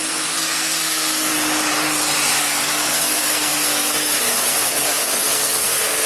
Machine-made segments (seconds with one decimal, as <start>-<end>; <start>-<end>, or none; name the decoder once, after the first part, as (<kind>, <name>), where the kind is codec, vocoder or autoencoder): 0.0-1.3 (codec, SNAC); 2.4-6.1